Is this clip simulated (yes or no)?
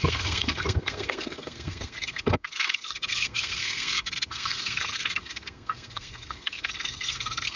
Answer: yes